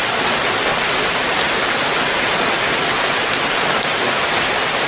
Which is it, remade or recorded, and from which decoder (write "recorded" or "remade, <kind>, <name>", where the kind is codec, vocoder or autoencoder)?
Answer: recorded